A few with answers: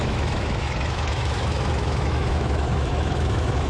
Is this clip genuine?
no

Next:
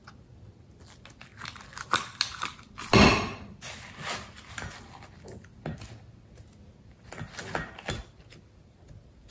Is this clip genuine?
yes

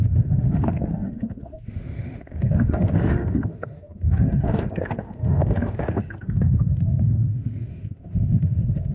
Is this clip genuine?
no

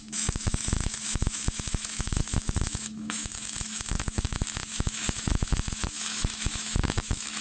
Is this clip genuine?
no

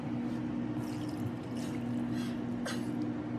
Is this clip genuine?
yes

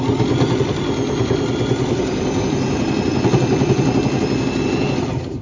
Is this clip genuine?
yes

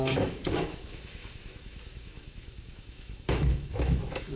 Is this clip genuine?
no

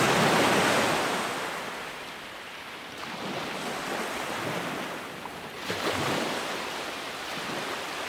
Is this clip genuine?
yes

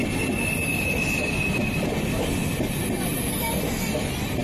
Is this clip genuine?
yes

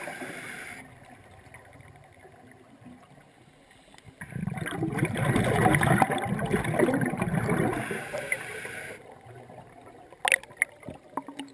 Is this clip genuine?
yes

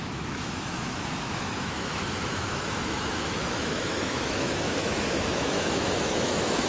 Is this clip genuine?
no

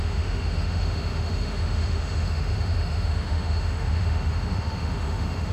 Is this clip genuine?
no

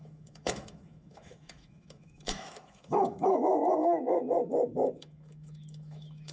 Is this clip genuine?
no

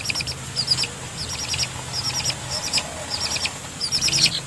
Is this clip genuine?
yes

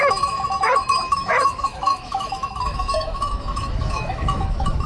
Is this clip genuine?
no